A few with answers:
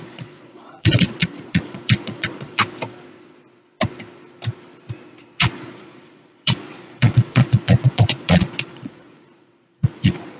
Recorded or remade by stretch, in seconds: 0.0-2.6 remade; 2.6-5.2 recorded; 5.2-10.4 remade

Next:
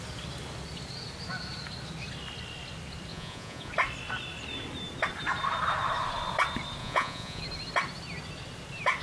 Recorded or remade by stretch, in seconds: 0.0-3.1 recorded; 3.1-3.7 remade; 3.7-6.8 recorded; 6.8-7.4 remade; 7.4-9.0 recorded

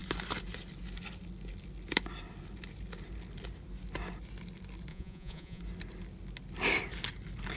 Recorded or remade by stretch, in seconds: 0.0-4.9 recorded; 4.9-5.6 remade; 5.6-7.6 recorded

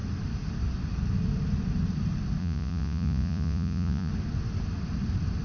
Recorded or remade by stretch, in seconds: 0.0-2.4 recorded; 2.4-4.1 remade; 4.1-5.4 recorded